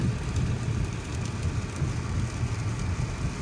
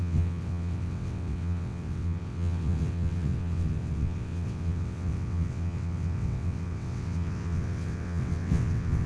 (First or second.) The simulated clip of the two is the second